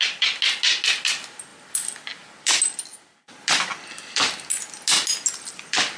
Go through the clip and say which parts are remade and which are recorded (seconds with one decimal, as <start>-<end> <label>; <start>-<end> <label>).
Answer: 0.0-6.0 recorded